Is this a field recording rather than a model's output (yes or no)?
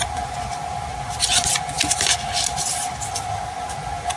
yes